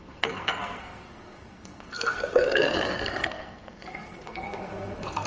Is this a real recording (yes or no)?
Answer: no